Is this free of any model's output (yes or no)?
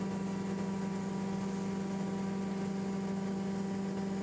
yes